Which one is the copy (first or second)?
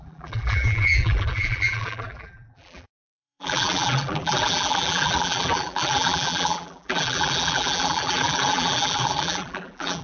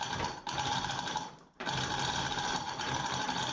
first